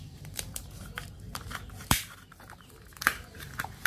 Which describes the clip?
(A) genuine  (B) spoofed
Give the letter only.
B